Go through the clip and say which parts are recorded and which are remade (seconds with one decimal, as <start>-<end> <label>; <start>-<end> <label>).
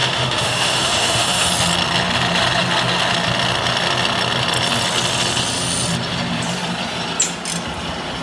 0.0-1.5 remade; 1.5-8.2 recorded